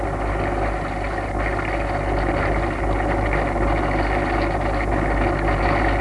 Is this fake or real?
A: real